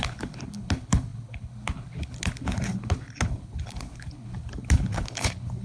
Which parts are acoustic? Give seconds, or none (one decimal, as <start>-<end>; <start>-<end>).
none